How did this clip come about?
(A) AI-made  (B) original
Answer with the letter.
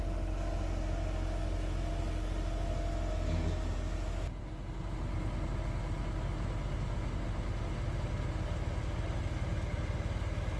B